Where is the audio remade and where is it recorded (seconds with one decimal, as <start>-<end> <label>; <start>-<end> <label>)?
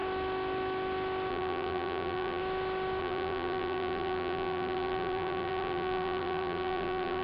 0.0-1.3 recorded; 1.3-2.4 remade; 2.4-3.0 recorded; 3.0-7.2 remade